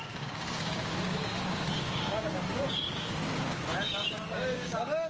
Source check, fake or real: fake